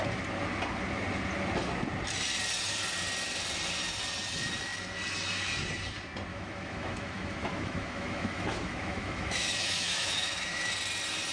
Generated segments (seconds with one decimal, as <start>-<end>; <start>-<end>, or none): 6.3-10.7